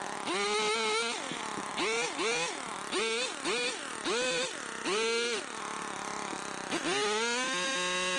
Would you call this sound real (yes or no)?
yes